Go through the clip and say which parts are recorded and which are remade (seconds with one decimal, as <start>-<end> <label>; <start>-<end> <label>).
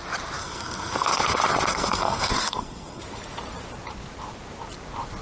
0.0-0.4 recorded; 0.4-1.2 remade; 1.2-1.7 recorded; 1.7-3.0 remade; 3.0-5.2 recorded